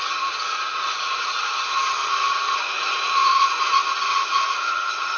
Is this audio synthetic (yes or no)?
yes